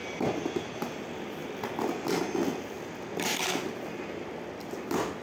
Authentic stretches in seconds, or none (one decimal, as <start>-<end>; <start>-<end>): 0.0-5.2